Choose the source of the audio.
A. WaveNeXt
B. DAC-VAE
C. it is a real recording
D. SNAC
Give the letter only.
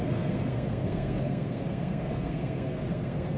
D